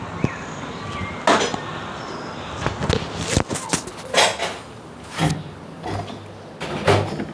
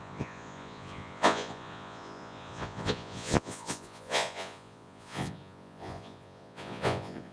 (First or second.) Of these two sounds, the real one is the first